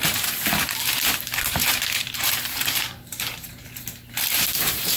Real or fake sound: fake